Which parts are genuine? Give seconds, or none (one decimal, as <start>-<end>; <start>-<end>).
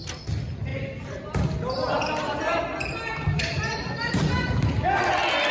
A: 0.0-5.5